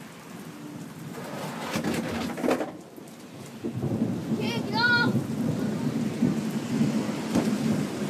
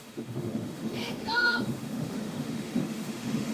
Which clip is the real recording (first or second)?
first